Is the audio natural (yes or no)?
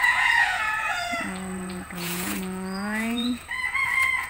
no